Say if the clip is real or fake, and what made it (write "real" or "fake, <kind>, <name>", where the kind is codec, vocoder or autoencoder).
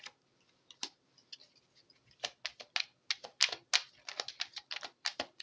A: real